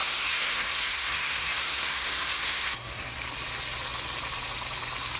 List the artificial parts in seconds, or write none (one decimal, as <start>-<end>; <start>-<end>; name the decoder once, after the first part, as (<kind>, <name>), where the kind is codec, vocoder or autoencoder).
0.0-3.1 (codec, SNAC)